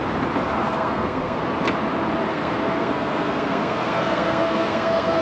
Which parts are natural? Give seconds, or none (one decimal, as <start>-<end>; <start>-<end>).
0.0-0.6; 1.4-2.3